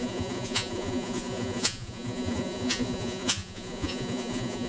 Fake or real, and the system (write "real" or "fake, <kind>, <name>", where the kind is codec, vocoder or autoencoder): fake, vocoder, Vocos